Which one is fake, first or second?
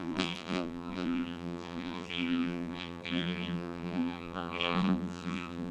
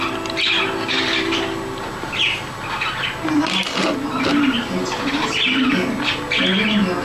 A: first